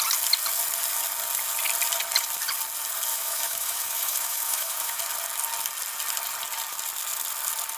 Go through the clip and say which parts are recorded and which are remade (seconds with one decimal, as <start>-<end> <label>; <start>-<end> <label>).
0.0-3.1 recorded; 3.1-5.0 remade; 5.0-7.8 recorded